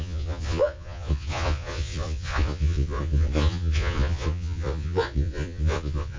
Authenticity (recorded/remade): remade